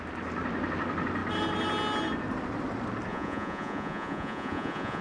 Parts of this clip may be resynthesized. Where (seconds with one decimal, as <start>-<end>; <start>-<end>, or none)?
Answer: 3.1-5.0